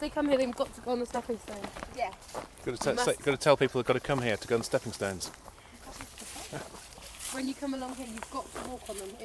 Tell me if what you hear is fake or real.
fake